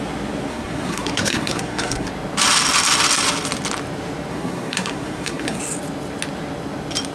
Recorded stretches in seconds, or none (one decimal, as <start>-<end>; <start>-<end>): 0.0-0.5; 2.1-4.3; 5.6-7.1